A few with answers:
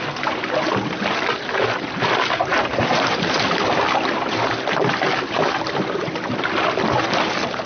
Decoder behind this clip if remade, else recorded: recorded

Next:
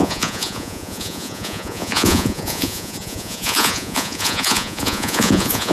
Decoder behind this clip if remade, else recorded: remade, vocoder, Vocos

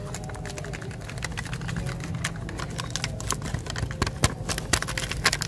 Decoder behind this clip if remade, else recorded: recorded